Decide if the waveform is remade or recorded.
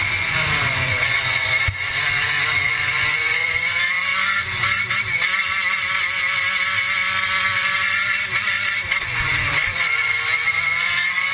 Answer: remade